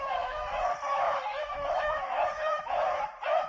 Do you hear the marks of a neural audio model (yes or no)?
yes